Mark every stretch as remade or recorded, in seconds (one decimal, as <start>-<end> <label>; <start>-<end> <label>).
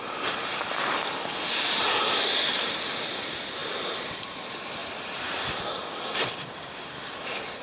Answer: 0.0-4.8 recorded; 4.8-5.3 remade; 5.3-7.6 recorded